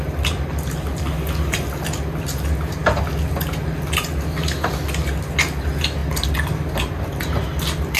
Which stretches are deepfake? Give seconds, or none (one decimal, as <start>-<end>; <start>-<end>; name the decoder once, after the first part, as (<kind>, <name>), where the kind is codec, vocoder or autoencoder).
none